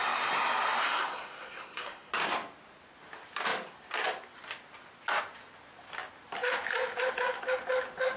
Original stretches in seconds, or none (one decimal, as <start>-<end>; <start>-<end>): 0.0-0.8; 2.1-8.2